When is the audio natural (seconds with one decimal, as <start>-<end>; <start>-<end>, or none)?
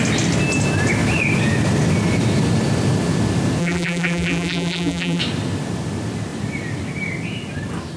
0.0-3.6; 5.2-8.0